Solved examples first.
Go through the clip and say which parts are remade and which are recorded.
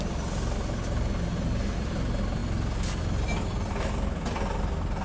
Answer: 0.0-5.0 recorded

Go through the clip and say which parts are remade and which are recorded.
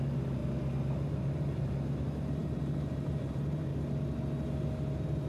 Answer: 0.0-0.4 remade; 0.4-1.2 recorded; 1.2-3.7 remade; 3.7-5.3 recorded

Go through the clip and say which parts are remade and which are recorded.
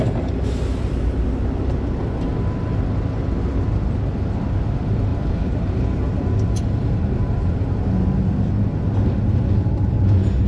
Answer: 0.0-5.1 recorded; 5.1-5.8 remade; 5.8-10.5 recorded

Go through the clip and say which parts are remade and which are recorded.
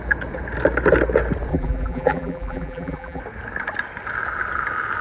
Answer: 0.0-1.5 recorded; 1.5-3.2 remade; 3.2-5.0 recorded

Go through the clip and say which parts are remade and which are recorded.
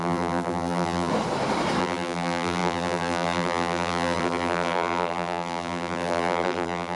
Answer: 0.0-1.1 remade; 1.1-1.8 recorded; 1.8-7.0 remade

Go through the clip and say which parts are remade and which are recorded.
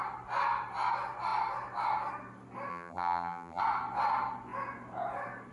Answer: 0.0-2.7 recorded; 2.7-3.6 remade; 3.6-5.5 recorded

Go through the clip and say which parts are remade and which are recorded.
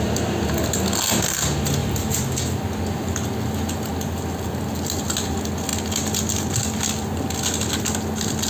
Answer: 0.0-8.5 recorded